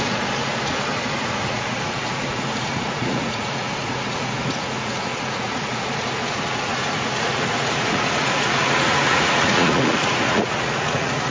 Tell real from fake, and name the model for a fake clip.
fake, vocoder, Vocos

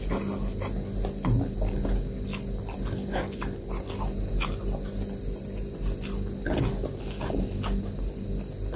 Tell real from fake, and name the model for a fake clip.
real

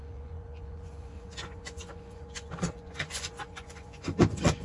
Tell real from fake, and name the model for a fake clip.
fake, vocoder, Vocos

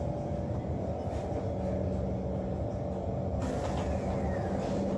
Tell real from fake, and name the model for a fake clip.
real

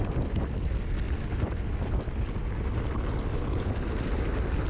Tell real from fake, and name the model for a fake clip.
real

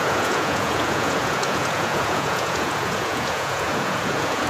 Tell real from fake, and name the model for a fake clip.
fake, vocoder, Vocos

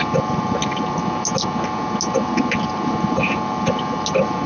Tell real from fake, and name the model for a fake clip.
real